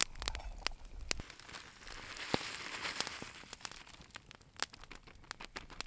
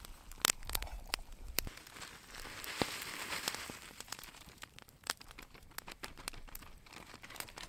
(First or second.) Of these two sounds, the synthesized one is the second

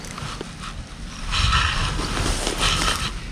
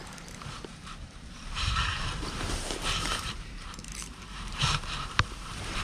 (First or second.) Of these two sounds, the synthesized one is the second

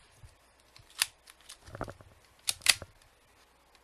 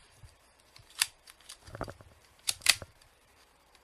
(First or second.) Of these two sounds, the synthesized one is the second